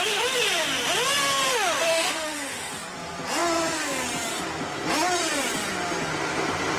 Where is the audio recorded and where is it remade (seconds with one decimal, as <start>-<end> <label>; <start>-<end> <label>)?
0.0-1.5 recorded; 1.5-2.7 remade; 2.7-6.8 recorded

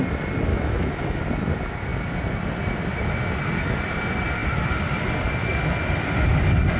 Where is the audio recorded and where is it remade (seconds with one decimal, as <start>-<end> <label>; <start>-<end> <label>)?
0.0-0.5 recorded; 0.5-1.2 remade; 1.2-6.8 recorded

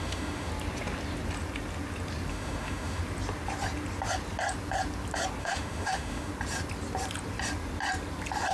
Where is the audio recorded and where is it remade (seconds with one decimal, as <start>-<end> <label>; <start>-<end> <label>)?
0.0-0.5 remade; 0.5-2.3 recorded; 2.3-3.0 remade; 3.0-5.4 recorded; 5.4-6.3 remade; 6.3-8.5 recorded

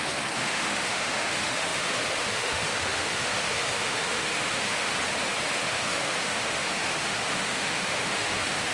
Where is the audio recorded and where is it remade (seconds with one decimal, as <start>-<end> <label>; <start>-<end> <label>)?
0.0-4.9 remade; 4.9-5.5 recorded; 5.5-8.7 remade

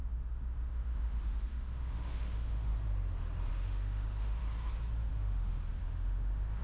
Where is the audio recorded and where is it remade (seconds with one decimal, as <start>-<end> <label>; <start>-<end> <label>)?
0.0-2.7 remade; 2.7-3.5 recorded; 3.5-4.4 remade; 4.4-5.1 recorded; 5.1-6.6 remade

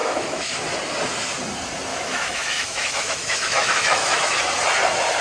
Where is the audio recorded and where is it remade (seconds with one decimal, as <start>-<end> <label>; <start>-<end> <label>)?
0.0-0.6 remade; 0.6-1.9 recorded; 1.9-4.4 remade; 4.4-5.2 recorded